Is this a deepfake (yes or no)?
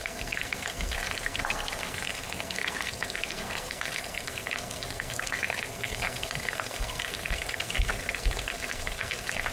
yes